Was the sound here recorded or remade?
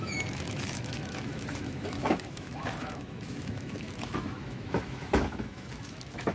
remade